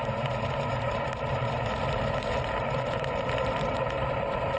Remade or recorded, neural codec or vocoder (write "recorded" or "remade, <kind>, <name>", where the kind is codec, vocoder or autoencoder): remade, vocoder, BigVGAN v2